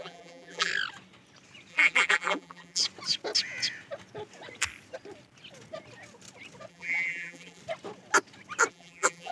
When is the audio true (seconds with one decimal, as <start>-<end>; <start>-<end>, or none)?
0.7-1.7; 2.8-6.7; 7.6-8.7